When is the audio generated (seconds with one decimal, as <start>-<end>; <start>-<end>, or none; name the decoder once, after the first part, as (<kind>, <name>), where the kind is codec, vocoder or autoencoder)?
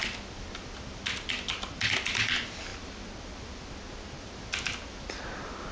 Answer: none